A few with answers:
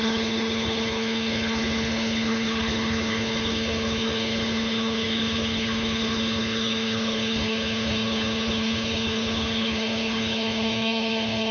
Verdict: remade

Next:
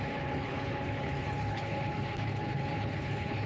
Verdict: remade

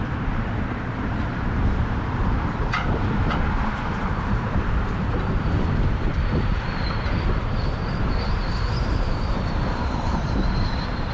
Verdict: remade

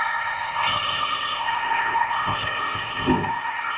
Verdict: remade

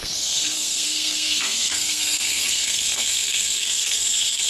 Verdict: remade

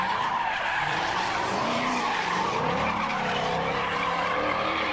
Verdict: remade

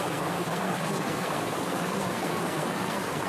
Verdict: remade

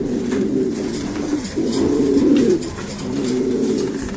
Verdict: recorded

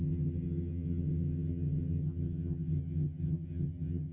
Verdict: remade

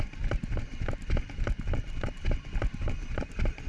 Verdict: recorded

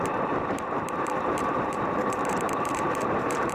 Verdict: remade